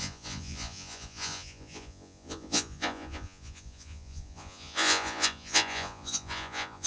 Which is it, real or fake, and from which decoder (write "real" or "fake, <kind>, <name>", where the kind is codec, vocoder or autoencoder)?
fake, vocoder, Vocos